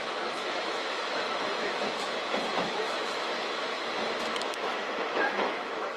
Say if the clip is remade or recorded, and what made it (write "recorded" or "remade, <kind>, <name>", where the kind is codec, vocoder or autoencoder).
remade, autoencoder, DAC-VAE